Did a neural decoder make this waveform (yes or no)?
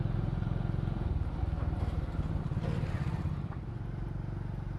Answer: no